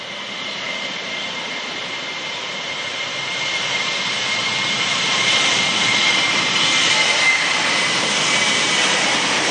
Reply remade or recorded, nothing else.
remade